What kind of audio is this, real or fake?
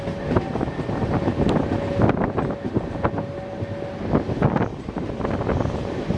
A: real